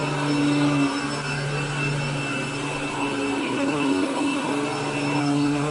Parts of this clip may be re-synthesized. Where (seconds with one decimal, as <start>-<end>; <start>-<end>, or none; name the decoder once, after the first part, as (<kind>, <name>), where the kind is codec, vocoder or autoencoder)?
3.4-4.5 (codec, SNAC); 5.2-5.7